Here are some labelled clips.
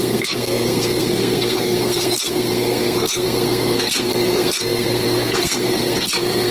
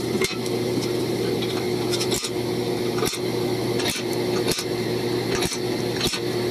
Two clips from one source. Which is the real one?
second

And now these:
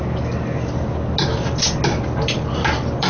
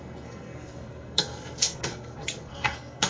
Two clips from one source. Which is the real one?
first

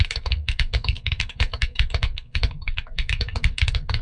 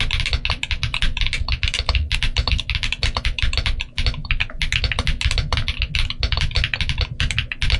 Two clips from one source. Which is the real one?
second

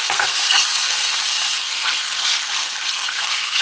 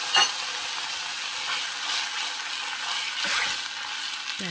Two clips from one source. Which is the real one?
second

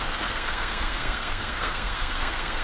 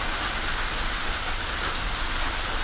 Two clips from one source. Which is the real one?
second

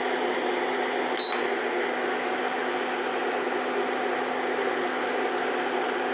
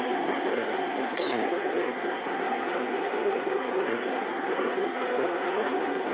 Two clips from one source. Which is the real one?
first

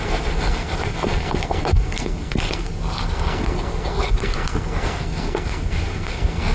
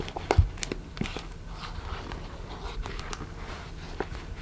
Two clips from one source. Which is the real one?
second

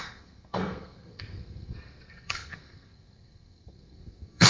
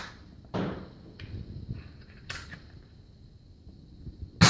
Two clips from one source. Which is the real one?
second